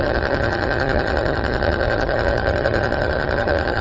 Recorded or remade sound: remade